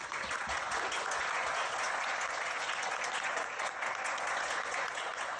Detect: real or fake fake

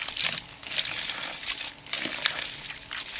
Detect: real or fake real